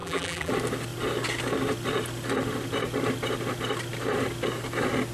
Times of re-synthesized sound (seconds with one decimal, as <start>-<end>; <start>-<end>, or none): 0.0-0.5